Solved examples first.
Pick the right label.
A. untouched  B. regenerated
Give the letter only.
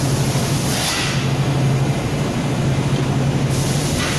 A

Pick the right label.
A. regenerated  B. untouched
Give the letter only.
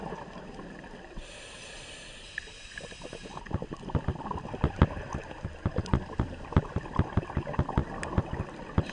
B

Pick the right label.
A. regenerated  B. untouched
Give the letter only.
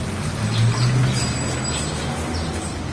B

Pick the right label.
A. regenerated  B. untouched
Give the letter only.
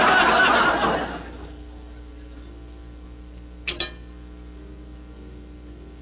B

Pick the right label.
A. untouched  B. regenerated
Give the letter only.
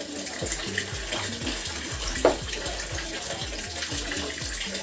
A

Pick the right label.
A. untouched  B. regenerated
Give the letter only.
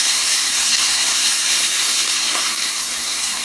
B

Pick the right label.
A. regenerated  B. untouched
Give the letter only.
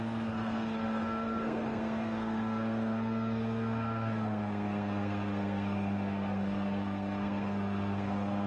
A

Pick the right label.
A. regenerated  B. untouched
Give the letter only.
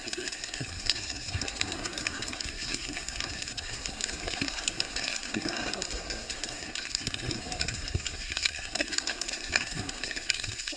A